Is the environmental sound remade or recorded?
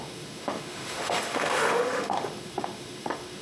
remade